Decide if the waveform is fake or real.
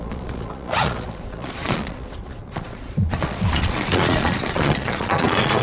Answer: fake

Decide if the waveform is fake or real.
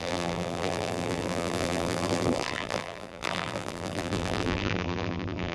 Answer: fake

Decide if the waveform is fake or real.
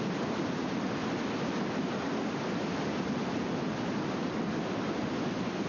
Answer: real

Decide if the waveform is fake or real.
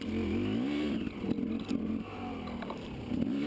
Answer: real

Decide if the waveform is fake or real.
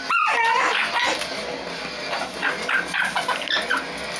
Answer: real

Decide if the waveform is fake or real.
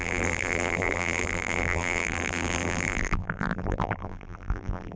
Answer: fake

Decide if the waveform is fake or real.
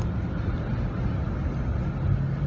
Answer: real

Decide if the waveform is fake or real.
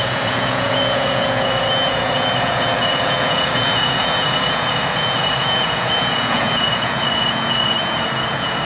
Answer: fake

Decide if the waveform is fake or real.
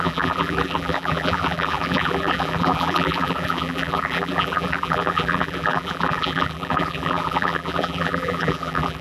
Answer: fake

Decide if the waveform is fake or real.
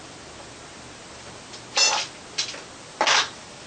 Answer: real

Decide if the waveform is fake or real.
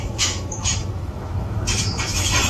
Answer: fake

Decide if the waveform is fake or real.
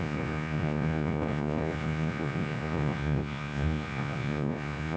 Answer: fake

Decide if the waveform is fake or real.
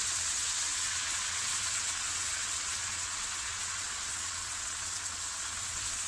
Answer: fake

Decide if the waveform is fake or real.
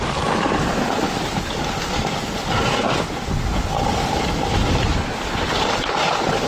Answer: real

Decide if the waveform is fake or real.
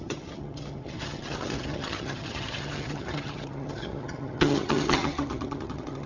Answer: fake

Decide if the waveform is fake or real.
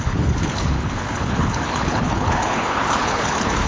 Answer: fake